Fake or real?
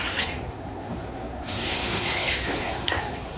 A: fake